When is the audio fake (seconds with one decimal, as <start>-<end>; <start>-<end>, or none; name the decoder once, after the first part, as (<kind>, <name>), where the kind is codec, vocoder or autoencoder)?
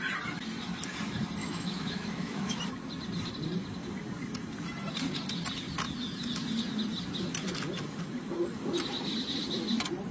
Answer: 1.4-2.6 (autoencoder, DAC-VAE)